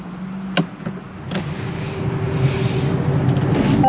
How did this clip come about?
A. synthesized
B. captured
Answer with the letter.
B